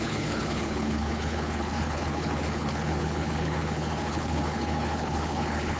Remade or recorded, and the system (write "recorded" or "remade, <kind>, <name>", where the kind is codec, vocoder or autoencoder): remade, codec, HILCodec